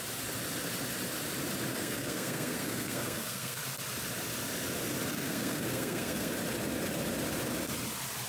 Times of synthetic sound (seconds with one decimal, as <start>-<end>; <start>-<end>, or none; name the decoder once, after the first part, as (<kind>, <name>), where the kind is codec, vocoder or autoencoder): 1.7-3.6 (codec, SNAC); 5.1-6.3